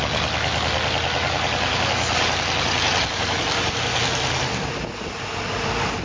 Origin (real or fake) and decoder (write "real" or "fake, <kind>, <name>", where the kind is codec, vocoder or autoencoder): real